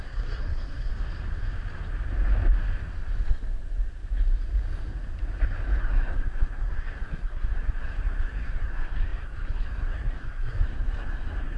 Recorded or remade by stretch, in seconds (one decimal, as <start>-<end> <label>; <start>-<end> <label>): 0.0-0.9 remade; 0.9-5.8 recorded; 5.8-11.6 remade